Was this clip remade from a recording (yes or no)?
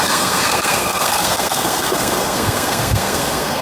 yes